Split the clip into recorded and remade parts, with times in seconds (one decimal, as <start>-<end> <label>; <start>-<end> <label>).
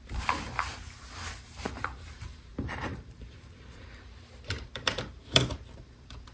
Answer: 0.0-6.3 remade